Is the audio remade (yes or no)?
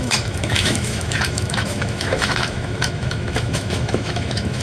yes